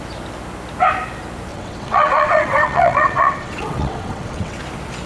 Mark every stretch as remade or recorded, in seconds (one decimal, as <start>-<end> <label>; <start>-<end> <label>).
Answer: 0.0-1.5 recorded; 1.5-4.6 remade; 4.6-5.1 recorded